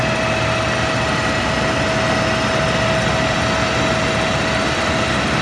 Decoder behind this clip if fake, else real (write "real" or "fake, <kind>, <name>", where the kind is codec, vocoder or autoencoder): real